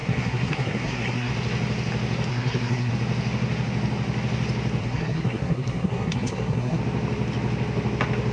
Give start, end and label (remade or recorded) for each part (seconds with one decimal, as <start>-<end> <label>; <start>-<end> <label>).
0.0-1.3 remade; 1.3-2.3 recorded; 2.3-2.9 remade; 2.9-4.8 recorded; 4.8-6.8 remade; 6.8-8.3 recorded